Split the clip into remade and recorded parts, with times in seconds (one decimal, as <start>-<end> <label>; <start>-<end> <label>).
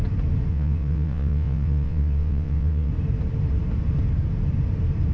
0.0-0.5 recorded; 0.5-2.9 remade; 2.9-5.1 recorded